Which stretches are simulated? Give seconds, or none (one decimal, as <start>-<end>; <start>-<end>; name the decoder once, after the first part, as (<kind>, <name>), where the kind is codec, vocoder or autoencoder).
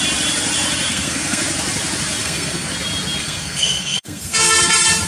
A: 0.9-1.4 (codec, SNAC); 2.2-2.7; 3.2-4.6